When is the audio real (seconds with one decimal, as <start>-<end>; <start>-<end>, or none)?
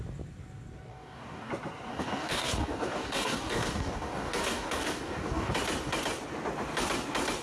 0.0-0.9; 1.5-1.9; 5.5-7.4